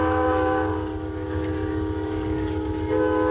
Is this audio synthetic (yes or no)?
yes